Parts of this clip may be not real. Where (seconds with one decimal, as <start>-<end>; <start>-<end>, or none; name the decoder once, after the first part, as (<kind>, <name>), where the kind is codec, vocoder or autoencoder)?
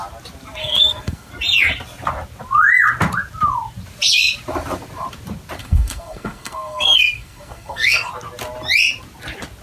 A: 0.6-1.3 (codec, SNAC); 5.6-8.1